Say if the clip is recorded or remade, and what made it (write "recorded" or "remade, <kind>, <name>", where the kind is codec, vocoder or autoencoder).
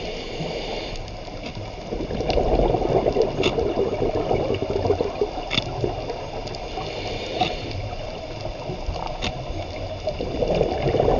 recorded